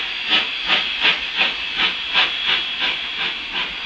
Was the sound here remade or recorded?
recorded